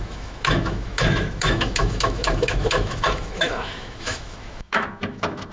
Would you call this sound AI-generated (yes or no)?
yes